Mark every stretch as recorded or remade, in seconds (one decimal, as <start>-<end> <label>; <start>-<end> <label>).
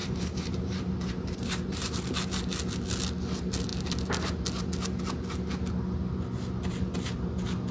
0.0-1.8 remade; 1.8-7.7 recorded